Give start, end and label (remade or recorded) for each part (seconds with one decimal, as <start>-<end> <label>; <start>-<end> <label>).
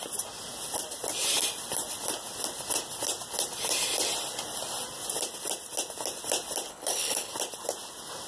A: 0.0-6.7 recorded; 6.7-7.3 remade; 7.3-8.3 recorded